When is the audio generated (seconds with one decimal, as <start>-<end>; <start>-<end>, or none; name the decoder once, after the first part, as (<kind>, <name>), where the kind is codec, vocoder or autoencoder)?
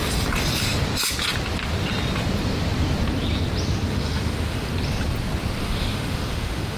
3.9-4.7 (autoencoder, DAC-VAE); 5.6-6.8